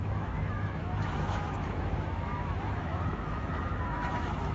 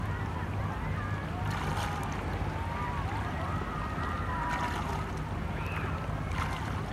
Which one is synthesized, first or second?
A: first